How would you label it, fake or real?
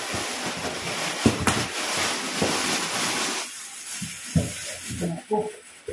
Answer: real